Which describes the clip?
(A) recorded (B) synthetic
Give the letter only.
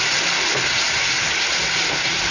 A